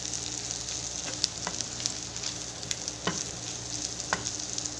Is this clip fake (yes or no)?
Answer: no